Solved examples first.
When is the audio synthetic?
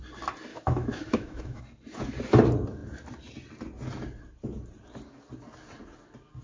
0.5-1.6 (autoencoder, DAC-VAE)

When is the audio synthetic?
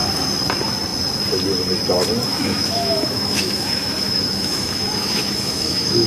2.3-6.1 (autoencoder, DAC-VAE)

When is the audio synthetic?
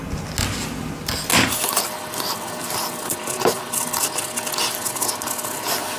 none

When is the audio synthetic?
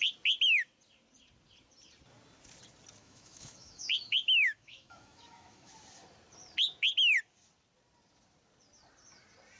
3.0-5.7 (autoencoder, DAC-VAE)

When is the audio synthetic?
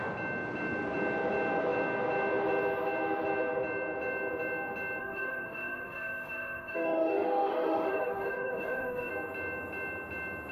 5.0-9.1 (autoencoder, DAC-VAE)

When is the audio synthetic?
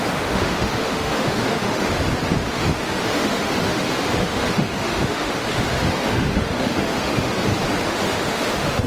0.0-2.0 (autoencoder, DAC-VAE); 2.5-7.3; 7.8-8.9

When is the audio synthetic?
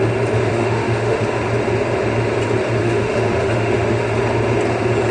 0.5-1.2 (autoencoder, DAC-VAE); 2.8-4.0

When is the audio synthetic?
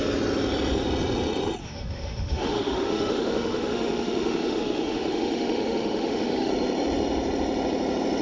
1.6-6.5 (autoencoder, DAC-VAE)